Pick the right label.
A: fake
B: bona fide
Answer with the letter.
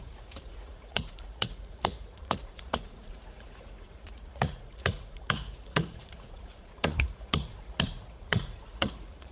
A